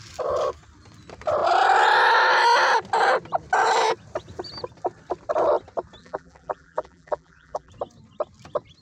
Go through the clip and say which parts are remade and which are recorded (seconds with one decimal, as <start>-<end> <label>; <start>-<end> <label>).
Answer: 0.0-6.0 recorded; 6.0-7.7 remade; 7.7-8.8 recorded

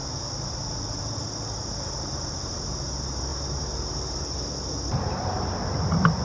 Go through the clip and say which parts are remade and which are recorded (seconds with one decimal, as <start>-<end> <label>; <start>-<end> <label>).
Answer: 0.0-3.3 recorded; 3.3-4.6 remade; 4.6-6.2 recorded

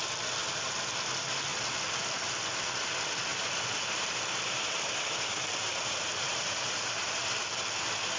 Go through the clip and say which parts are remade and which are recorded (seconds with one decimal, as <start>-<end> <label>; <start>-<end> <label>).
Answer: 0.0-3.3 recorded; 3.3-7.4 remade; 7.4-8.2 recorded

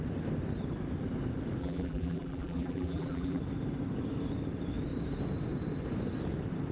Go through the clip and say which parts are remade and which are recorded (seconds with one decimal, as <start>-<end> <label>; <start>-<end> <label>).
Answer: 0.0-1.6 recorded; 1.6-3.4 remade; 3.4-6.7 recorded

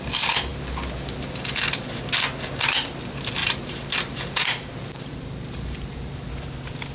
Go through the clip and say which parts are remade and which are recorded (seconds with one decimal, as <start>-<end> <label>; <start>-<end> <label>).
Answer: 0.0-3.4 recorded; 3.4-6.3 remade; 6.3-6.9 recorded